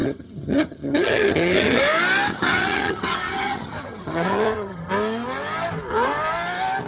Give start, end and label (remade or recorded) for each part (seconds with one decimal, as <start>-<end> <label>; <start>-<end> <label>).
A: 0.0-1.8 remade; 1.8-2.3 recorded; 2.3-4.9 remade; 4.9-6.9 recorded

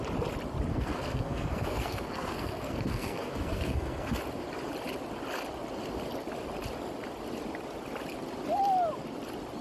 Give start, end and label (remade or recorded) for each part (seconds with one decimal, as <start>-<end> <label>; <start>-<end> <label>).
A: 0.0-0.7 recorded; 0.7-4.2 remade; 4.2-9.6 recorded

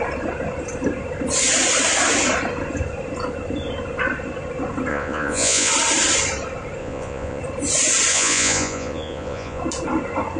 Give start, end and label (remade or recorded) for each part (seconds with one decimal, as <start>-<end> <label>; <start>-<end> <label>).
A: 0.0-4.9 recorded; 4.9-5.7 remade; 5.7-6.8 recorded; 6.8-7.4 remade; 7.4-8.1 recorded; 8.1-9.6 remade; 9.6-10.4 recorded